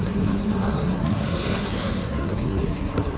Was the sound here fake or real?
fake